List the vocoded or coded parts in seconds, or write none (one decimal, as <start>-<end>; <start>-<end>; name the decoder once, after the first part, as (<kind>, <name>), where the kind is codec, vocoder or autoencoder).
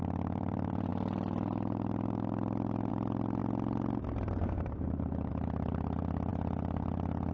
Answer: 0.0-0.9 (vocoder, BigVGAN v2); 2.9-3.4; 5.3-6.3